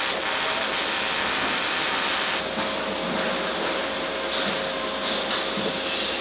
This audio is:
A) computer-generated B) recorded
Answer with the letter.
B